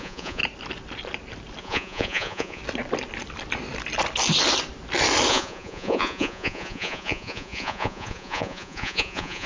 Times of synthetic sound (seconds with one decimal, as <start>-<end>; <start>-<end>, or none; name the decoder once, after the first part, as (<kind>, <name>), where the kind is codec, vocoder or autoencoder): 0.0-0.4 (vocoder, Vocos); 1.6-2.6; 5.3-9.5